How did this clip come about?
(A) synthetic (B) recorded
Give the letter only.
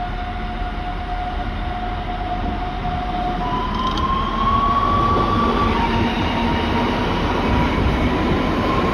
B